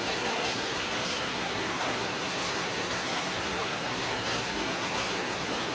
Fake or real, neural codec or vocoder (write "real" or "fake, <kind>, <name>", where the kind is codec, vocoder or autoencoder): fake, codec, SNAC